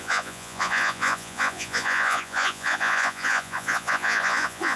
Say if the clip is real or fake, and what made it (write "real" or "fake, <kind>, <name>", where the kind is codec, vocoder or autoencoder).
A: fake, vocoder, Vocos